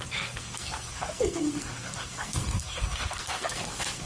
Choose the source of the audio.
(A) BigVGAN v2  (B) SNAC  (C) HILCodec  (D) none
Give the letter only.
B